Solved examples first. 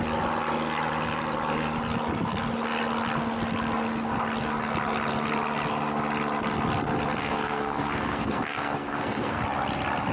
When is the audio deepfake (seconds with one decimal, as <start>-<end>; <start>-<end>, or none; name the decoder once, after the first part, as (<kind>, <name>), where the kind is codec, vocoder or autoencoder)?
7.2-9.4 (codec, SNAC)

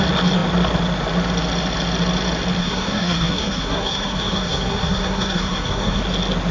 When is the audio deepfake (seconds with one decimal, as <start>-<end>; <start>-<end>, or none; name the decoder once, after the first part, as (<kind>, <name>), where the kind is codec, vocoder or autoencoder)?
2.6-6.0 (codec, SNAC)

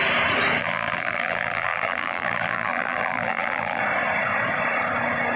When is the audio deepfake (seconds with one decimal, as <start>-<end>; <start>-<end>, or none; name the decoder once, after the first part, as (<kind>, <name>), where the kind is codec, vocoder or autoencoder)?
0.6-3.8 (vocoder, BigVGAN v2)

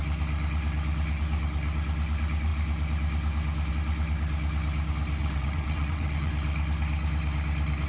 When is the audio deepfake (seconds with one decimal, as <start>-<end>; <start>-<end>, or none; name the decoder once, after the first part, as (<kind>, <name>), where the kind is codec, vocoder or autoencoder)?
5.2-6.3 (vocoder, WaveNeXt)

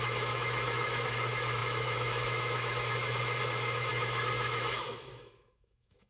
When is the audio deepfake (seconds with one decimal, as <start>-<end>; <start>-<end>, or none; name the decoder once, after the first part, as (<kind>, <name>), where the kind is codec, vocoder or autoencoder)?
0.0-6.1 (autoencoder, DAC-VAE)

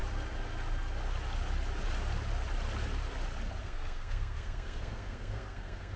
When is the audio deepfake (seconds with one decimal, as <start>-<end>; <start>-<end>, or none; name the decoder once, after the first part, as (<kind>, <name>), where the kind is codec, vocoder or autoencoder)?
3.6-6.0 (codec, SNAC)